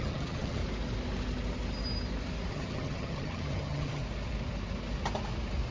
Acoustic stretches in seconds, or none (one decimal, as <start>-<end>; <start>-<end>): 0.6-2.5; 4.0-5.7

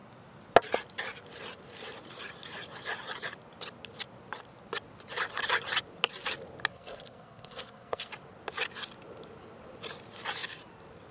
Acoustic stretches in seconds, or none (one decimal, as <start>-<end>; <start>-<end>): 0.0-6.7; 8.1-11.1

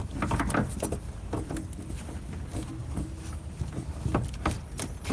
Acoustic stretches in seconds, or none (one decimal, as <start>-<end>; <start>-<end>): 0.0-5.1

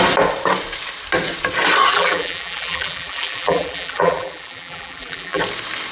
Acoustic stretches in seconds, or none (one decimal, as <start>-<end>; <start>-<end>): 0.0-1.9; 5.4-5.9

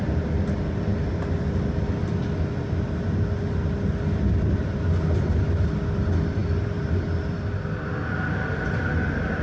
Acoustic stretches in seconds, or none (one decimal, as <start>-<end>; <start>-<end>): 0.0-9.4

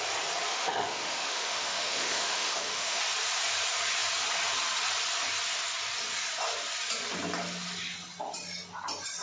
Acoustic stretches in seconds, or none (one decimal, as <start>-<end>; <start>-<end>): 0.0-0.5; 3.0-9.2